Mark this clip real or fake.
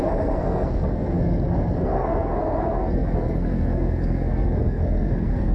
fake